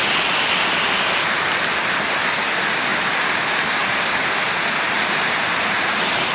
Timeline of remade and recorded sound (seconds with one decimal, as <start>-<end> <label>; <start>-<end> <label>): 0.0-3.8 recorded; 3.8-4.5 remade; 4.5-6.3 recorded